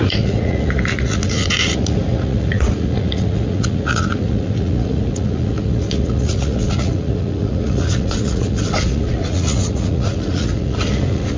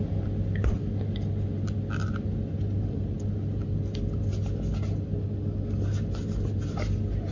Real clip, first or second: second